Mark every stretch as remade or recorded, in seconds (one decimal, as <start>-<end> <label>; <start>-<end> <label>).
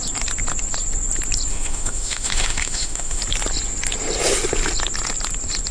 0.0-1.5 recorded; 1.5-3.2 remade; 3.2-5.7 recorded